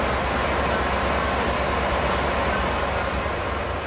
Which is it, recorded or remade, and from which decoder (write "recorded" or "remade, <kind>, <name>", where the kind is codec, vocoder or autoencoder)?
recorded